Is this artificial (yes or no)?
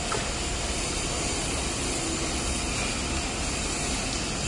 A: no